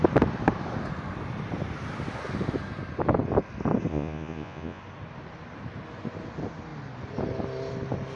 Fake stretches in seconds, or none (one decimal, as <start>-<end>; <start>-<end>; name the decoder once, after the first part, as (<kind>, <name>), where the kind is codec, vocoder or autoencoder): 3.9-4.8 (vocoder, Vocos)